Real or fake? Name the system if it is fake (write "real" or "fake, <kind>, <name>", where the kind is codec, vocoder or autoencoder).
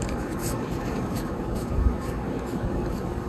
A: fake, codec, DAC